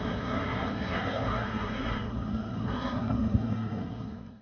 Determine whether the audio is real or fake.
fake